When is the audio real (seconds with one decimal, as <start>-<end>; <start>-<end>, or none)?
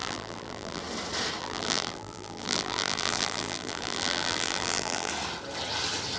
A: 0.8-1.4; 5.1-6.2